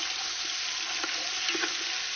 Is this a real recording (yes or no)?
yes